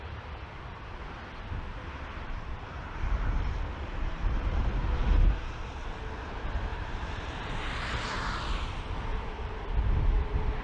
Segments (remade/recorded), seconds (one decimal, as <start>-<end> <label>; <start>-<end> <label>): 0.0-1.7 recorded; 1.7-4.7 remade; 4.7-6.7 recorded; 6.7-8.4 remade; 8.4-9.1 recorded; 9.1-9.7 remade; 9.7-10.6 recorded